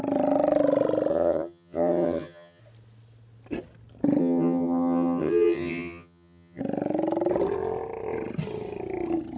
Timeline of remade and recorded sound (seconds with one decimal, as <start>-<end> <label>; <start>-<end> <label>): 0.0-1.1 recorded; 1.1-2.6 remade; 2.6-4.2 recorded; 4.2-6.6 remade; 6.6-9.4 recorded